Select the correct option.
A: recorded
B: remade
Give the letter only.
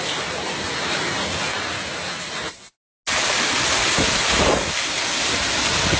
A